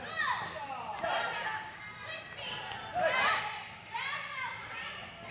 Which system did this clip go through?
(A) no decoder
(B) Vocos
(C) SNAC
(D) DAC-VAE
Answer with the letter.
A